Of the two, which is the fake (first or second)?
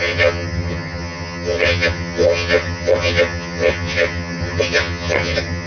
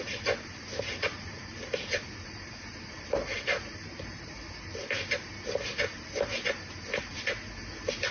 first